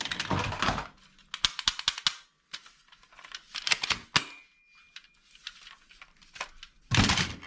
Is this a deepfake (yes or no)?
no